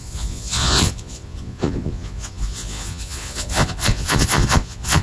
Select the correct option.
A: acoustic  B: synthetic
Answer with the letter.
B